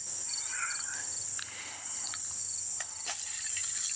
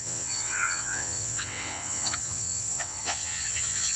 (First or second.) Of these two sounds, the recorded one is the first